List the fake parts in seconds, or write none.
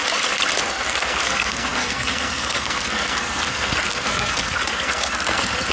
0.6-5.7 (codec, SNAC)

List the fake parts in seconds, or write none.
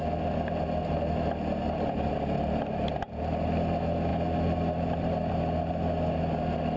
none